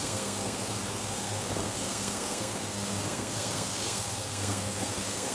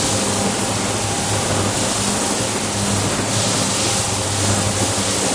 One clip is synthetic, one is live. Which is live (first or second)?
second